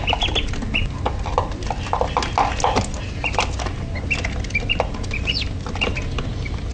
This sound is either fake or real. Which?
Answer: real